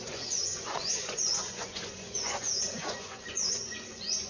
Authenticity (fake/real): fake